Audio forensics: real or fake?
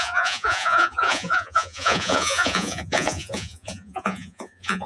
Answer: fake